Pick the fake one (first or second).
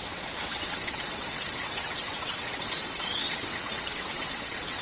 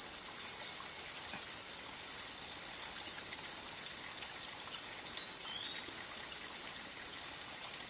first